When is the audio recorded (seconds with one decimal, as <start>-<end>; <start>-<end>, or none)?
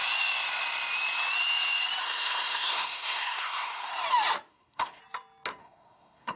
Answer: 0.0-2.0; 3.9-4.5; 5.0-5.6